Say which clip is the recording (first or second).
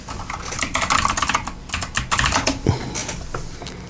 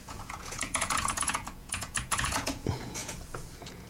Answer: first